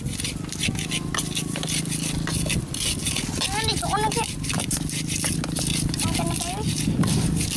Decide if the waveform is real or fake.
real